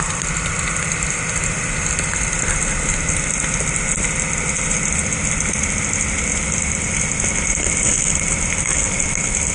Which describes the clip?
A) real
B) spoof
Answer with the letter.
A